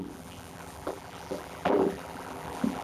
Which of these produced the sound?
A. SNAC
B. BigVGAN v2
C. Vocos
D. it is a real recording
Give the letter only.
B